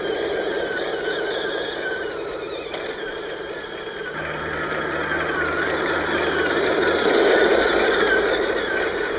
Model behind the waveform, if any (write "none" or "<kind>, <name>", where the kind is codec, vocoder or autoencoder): none